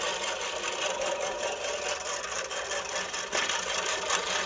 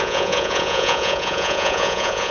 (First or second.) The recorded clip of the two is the first